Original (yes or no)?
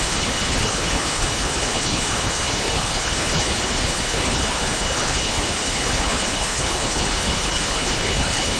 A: no